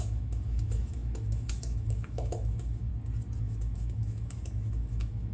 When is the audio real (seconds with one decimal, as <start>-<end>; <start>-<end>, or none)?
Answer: 2.9-3.4